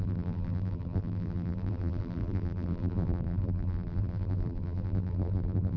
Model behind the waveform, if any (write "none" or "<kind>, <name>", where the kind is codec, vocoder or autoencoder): vocoder, BigVGAN v2